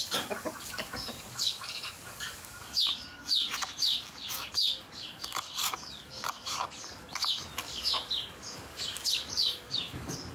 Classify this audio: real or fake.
fake